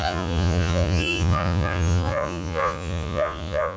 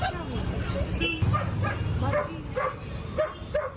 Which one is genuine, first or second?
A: second